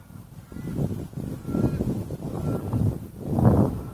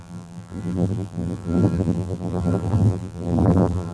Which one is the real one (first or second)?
first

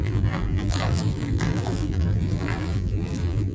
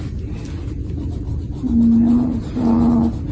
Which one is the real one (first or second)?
second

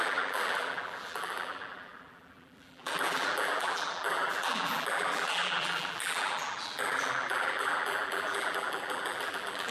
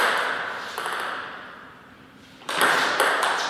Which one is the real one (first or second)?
second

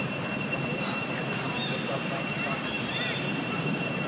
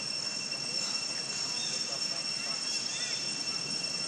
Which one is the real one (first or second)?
second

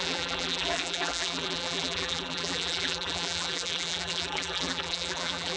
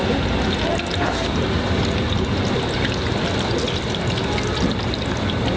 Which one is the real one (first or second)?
second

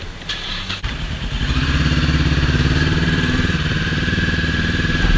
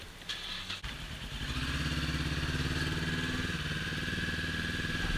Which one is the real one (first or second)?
second